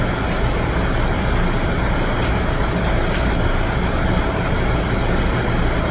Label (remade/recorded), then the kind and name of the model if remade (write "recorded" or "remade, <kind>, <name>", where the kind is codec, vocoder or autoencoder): recorded